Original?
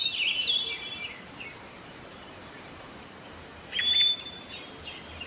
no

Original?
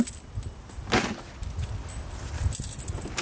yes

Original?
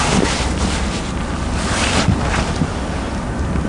yes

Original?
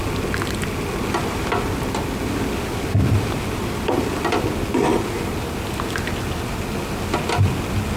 yes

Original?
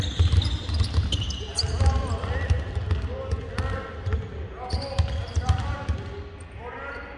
yes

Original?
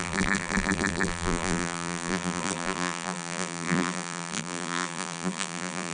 no